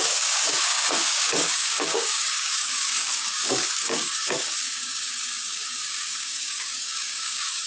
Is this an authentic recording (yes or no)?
no